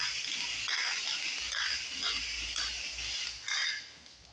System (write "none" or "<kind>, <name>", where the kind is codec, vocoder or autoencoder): none